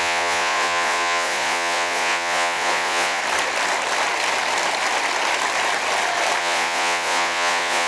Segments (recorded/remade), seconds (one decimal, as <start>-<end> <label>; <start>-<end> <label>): 0.0-3.2 remade; 3.2-6.4 recorded; 6.4-7.9 remade